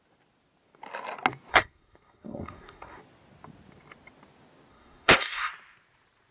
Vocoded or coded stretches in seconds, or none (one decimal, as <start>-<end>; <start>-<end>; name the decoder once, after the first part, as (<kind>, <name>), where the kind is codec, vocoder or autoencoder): 1.5-3.0 (codec, SNAC); 4.7-5.5

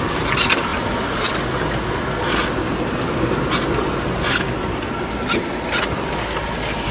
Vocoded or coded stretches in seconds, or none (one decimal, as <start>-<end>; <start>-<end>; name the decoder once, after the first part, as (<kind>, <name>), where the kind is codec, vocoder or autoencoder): none

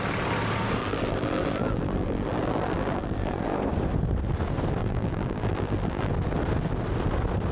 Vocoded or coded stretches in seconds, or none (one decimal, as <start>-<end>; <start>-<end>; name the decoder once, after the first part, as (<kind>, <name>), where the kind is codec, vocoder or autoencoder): 0.8-3.6 (vocoder, BigVGAN v2); 4.8-6.1